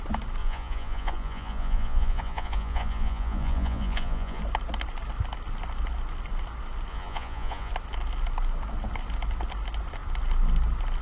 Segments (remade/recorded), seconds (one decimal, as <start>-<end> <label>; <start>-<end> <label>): 0.0-0.4 recorded; 0.4-4.4 remade; 4.4-6.9 recorded; 6.9-7.7 remade; 7.7-11.0 recorded